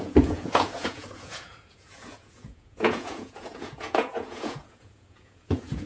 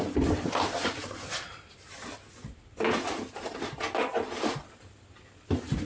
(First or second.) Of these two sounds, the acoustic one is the second